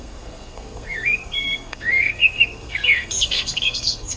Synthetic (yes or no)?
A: yes